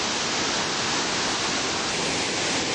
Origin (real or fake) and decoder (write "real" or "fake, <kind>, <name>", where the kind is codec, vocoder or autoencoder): real